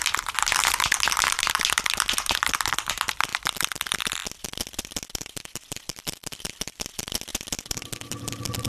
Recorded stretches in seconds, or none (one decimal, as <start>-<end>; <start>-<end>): 0.0-8.7